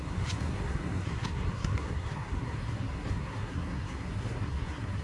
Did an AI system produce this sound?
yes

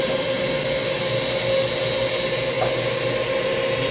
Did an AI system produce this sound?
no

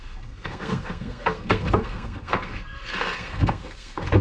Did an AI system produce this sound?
yes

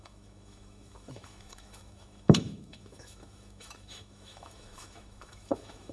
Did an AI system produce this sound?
yes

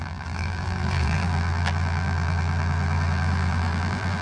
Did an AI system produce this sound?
yes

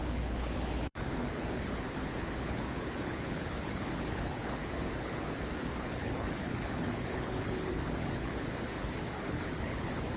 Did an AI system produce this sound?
yes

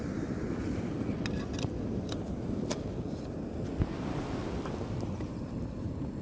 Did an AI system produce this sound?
no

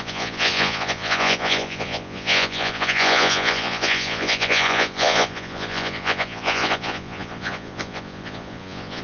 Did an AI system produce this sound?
yes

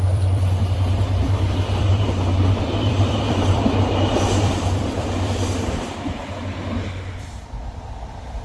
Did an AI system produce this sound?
yes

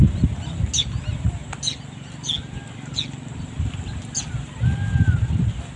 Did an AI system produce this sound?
no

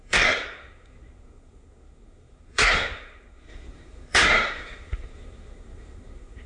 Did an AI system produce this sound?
yes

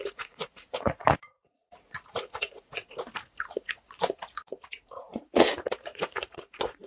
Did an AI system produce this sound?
yes